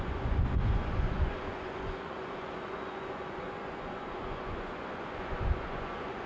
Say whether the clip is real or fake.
fake